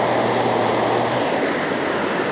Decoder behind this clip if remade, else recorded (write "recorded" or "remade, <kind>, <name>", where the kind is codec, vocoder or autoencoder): recorded